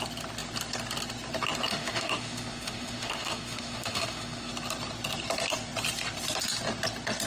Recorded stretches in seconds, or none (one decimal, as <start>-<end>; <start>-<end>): 0.0-1.7; 4.5-7.3

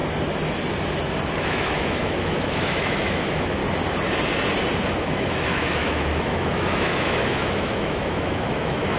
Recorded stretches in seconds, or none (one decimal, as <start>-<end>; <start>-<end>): 0.0-1.3; 3.6-5.0